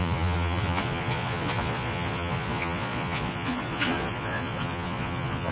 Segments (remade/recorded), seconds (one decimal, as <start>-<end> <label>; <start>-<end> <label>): 0.0-5.5 remade